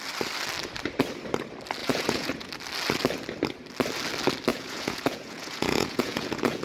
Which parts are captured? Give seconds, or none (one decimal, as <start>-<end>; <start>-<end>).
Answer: 0.0-1.8; 2.5-4.5